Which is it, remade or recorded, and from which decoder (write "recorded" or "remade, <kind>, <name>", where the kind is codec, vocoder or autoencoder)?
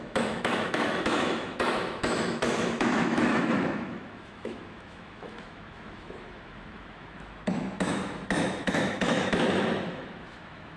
remade, autoencoder, DAC-VAE